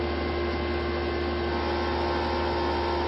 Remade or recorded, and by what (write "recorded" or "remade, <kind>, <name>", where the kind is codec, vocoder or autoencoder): recorded